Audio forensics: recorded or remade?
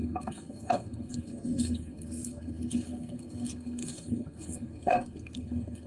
remade